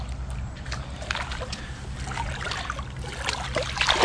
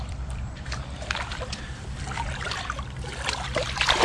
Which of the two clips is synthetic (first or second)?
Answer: second